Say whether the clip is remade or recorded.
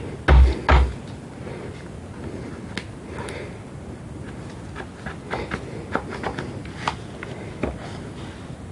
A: recorded